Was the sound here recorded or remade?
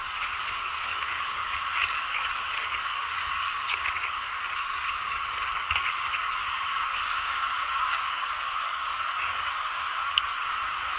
remade